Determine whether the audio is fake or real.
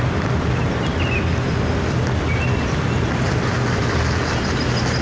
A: real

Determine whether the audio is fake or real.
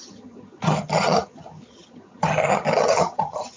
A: fake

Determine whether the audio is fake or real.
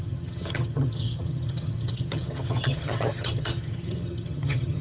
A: fake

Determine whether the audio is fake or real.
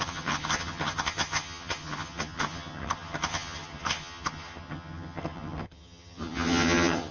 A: fake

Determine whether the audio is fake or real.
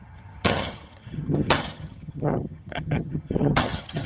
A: fake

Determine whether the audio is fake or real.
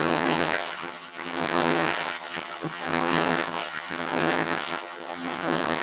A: fake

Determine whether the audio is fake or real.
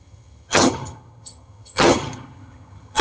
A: fake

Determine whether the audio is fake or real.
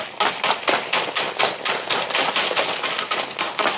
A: real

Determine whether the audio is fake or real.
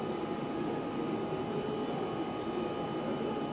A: real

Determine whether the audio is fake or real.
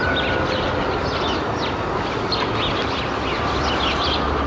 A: real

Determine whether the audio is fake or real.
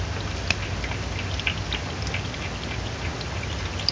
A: real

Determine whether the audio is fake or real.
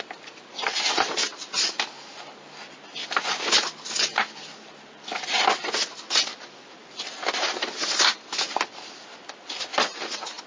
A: real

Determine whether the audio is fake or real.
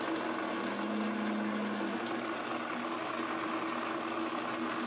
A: real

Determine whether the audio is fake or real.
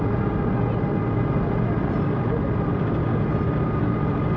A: real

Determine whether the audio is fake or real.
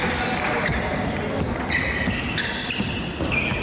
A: real